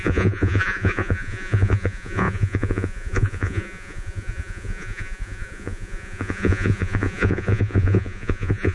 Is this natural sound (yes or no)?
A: no